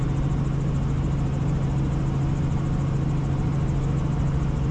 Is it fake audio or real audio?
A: real